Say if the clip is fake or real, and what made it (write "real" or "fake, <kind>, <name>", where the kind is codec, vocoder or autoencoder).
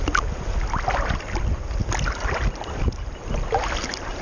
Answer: real